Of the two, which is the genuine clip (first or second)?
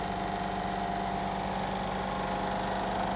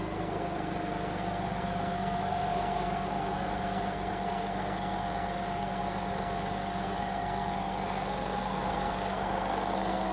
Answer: first